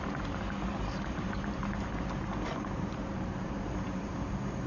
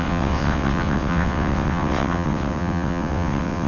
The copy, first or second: second